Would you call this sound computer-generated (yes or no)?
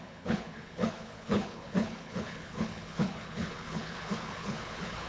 yes